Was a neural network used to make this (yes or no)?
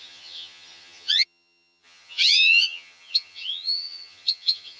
yes